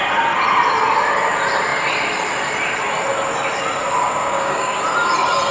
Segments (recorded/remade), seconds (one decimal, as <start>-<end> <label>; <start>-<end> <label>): 0.0-4.2 recorded; 4.2-4.8 remade; 4.8-5.5 recorded

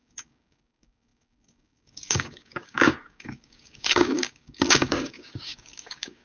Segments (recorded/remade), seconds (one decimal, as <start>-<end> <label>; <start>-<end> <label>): 0.0-6.2 remade

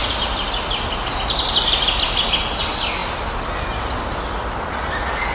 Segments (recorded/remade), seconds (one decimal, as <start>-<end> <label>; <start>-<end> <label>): 0.0-5.3 recorded